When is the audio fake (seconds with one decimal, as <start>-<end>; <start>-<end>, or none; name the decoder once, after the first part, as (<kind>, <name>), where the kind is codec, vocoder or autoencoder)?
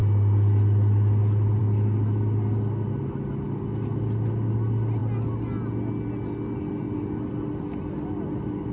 none